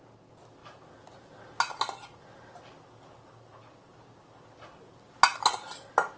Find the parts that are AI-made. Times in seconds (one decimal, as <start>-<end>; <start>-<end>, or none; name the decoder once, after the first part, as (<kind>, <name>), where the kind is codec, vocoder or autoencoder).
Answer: none